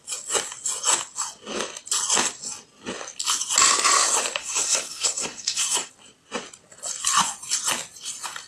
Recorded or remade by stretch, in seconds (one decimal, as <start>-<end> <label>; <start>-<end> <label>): 0.0-4.4 recorded; 4.4-5.9 remade; 5.9-8.5 recorded

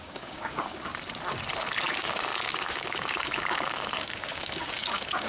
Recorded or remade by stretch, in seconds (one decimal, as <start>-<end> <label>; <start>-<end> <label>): 0.0-0.9 remade; 0.9-1.9 recorded; 1.9-5.3 remade

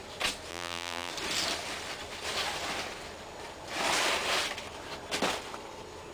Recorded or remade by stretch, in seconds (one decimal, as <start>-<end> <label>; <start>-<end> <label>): 0.0-0.5 recorded; 0.5-1.1 remade; 1.1-6.1 recorded

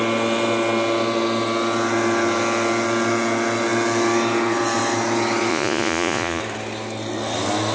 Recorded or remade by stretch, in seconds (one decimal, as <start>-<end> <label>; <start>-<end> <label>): 0.0-5.5 recorded; 5.5-6.4 remade; 6.4-7.7 recorded

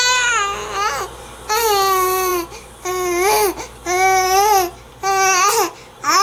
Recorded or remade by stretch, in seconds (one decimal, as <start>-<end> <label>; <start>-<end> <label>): 0.0-6.2 recorded

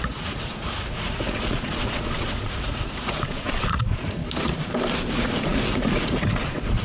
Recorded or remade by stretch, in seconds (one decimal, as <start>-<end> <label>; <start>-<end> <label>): 0.0-4.2 remade; 4.2-5.1 recorded; 5.1-6.8 remade